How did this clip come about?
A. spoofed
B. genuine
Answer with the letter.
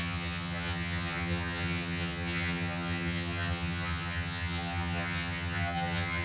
A